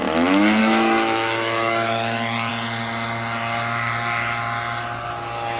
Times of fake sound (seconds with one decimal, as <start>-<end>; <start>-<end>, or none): 0.6-2.5